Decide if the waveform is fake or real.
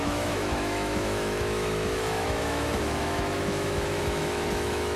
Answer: fake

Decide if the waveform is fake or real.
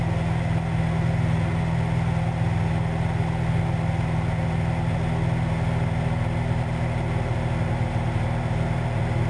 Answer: real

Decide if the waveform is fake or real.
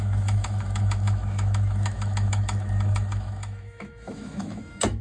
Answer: fake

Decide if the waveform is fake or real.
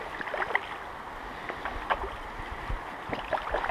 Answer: real